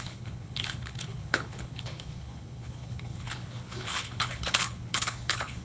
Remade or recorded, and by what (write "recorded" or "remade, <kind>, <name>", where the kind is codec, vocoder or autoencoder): remade, codec, HILCodec